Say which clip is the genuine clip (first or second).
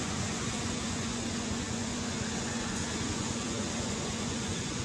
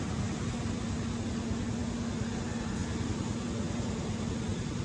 second